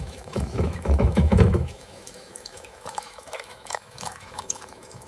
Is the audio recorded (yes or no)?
no